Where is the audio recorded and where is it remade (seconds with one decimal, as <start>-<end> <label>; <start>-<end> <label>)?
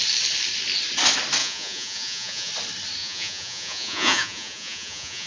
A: 0.0-1.4 recorded; 1.4-2.5 remade; 2.5-3.0 recorded; 3.0-5.3 remade